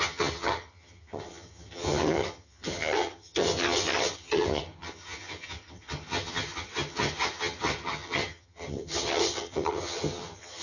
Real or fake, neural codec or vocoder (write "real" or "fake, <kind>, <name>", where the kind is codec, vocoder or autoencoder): fake, vocoder, HiFi-GAN